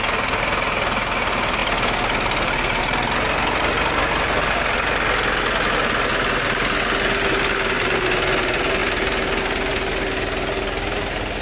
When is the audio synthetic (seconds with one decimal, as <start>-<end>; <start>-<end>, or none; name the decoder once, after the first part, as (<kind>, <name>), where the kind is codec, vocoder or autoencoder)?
none